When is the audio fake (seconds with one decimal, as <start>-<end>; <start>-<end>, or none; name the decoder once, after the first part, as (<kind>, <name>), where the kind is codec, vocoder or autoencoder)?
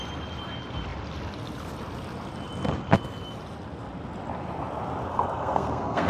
5.1-6.1 (codec, SNAC)